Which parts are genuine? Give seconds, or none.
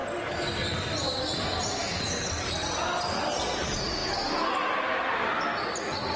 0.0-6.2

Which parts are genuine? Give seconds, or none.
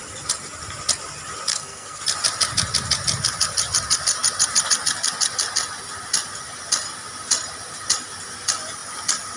0.0-1.5; 2.0-9.4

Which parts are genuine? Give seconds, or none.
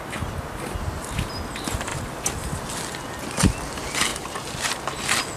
0.0-4.1; 4.8-5.4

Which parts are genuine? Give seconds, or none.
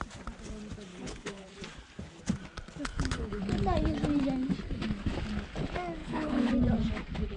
0.0-0.9; 1.5-2.9; 3.4-6.0; 6.5-7.4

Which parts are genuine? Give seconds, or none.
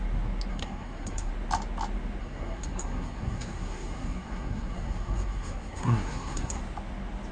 0.0-0.5; 1.3-2.2; 6.6-7.3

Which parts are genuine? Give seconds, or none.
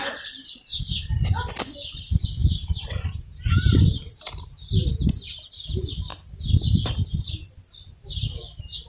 0.0-0.7; 1.3-2.4; 4.9-8.9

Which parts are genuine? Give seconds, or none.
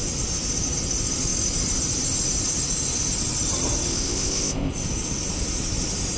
0.0-3.9; 4.7-6.2